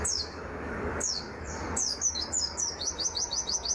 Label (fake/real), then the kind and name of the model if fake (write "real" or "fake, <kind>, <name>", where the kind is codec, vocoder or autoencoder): fake, codec, DAC